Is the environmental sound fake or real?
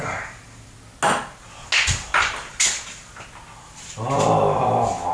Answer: real